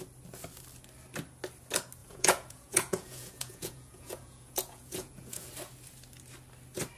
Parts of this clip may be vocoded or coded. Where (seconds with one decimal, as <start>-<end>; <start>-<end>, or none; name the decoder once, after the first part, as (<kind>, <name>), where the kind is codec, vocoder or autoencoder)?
2.0-5.5 (vocoder, Vocos)